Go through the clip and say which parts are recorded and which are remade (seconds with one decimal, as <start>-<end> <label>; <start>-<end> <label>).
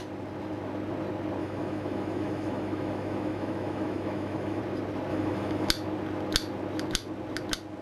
0.0-1.4 recorded; 1.4-4.6 remade; 4.6-5.1 recorded; 5.1-5.7 remade; 5.7-7.8 recorded